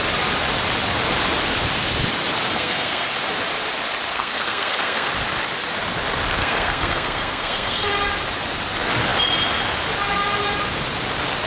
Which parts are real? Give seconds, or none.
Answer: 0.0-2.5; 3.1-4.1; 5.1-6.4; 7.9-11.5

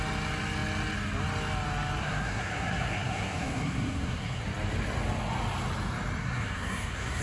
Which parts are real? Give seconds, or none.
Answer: 0.0-2.0; 4.4-6.2

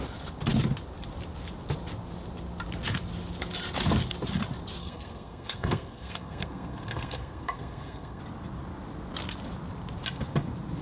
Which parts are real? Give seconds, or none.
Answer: 0.0-4.8; 8.2-10.8